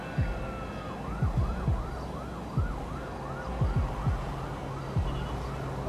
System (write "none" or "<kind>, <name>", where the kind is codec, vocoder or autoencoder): none